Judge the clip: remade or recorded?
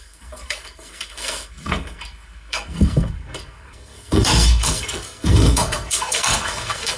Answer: remade